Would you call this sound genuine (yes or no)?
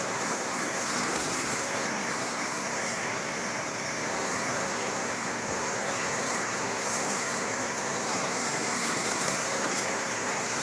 no